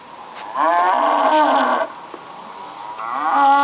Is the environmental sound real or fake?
real